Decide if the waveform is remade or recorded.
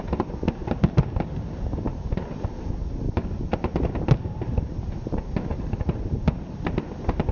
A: recorded